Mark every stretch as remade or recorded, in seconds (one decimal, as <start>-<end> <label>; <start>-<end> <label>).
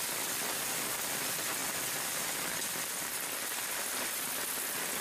0.0-5.0 recorded